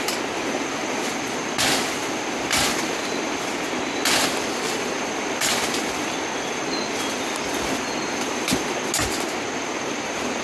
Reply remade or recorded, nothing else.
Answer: recorded